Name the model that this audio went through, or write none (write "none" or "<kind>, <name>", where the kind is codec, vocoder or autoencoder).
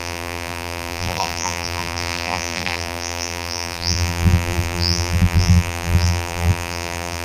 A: vocoder, BigVGAN v2